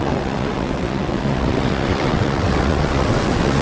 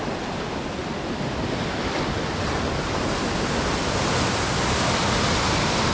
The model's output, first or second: first